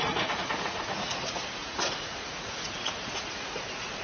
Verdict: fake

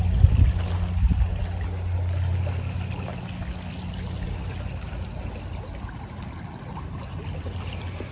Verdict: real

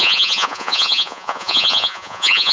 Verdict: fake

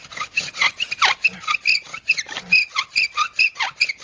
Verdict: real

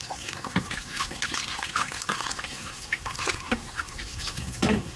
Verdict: fake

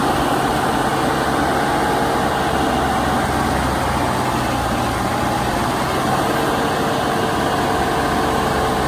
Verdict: real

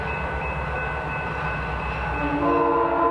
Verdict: real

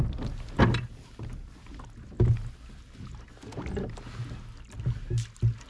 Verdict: real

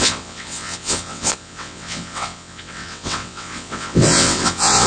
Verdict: fake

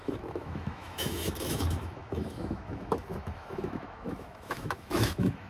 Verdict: fake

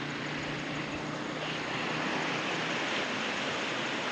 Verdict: real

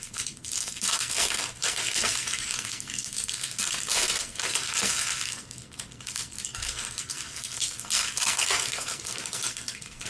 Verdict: fake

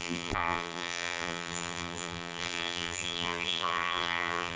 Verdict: fake